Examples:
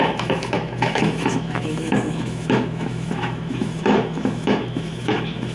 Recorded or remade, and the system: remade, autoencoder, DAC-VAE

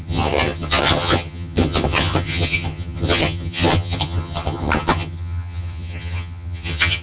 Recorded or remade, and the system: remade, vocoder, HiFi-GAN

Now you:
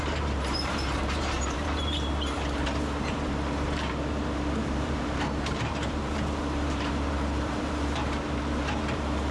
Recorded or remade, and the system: remade, vocoder, BigVGAN v2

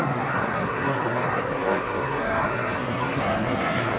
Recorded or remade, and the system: remade, codec, SNAC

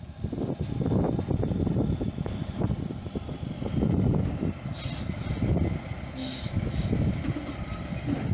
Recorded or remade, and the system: recorded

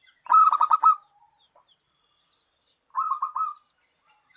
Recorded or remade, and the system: recorded